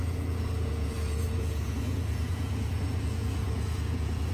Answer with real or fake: fake